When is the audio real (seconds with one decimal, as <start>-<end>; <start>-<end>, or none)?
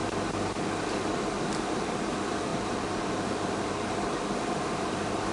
0.0-0.8